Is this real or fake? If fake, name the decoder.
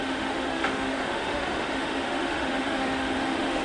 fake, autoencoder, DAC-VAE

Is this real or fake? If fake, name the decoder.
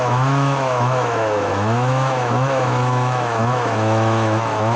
fake, autoencoder, DAC-VAE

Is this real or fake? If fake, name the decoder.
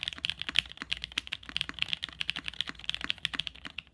real